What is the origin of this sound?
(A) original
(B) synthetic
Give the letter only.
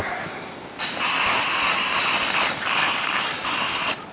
B